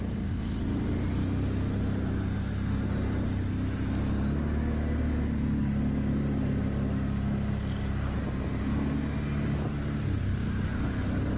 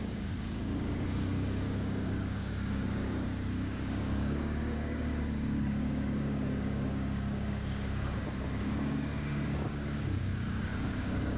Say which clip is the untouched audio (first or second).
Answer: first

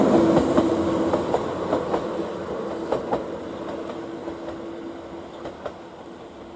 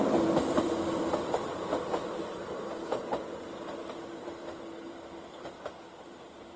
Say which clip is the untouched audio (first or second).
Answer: first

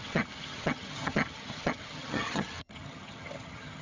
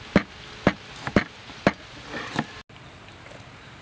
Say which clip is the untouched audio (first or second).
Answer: second